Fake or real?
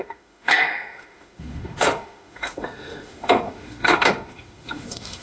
fake